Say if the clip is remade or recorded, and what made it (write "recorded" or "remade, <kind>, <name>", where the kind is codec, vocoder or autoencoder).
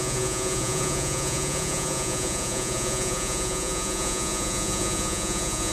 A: remade, vocoder, Vocos